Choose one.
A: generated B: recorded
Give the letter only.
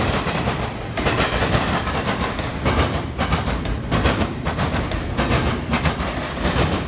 A